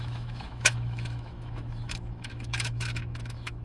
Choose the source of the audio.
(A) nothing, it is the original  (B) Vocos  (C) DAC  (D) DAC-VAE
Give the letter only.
D